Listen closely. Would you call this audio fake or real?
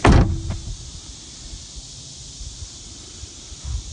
real